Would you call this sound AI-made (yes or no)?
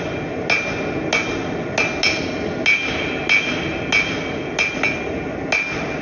no